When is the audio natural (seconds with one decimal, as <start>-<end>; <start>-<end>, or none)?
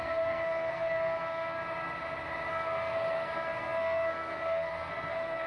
1.6-2.5